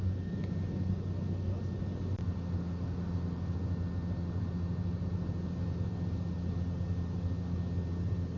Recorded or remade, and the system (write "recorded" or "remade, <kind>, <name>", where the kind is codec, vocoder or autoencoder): recorded